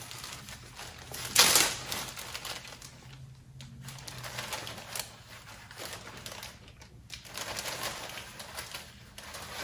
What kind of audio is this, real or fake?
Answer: real